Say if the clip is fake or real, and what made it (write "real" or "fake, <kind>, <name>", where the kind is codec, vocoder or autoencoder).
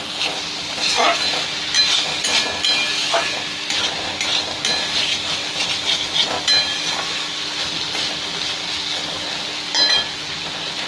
real